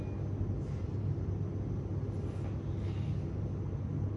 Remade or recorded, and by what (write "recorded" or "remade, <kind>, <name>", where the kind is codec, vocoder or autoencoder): recorded